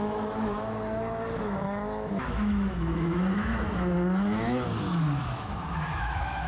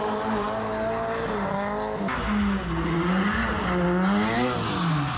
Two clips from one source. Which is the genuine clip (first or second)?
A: second